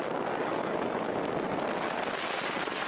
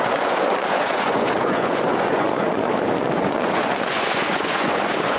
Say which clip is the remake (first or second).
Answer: second